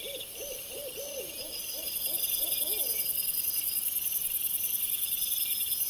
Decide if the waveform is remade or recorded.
recorded